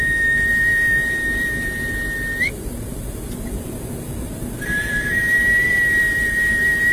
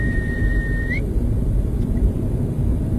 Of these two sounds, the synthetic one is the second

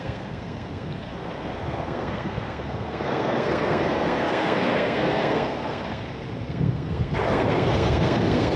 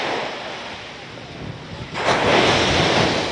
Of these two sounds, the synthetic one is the first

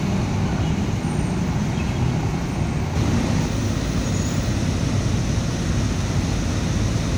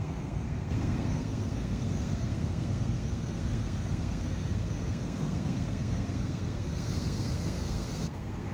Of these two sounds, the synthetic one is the second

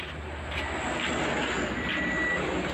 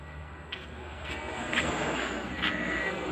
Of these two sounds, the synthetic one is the second